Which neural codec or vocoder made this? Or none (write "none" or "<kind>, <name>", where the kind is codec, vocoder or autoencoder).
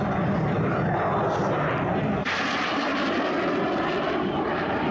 none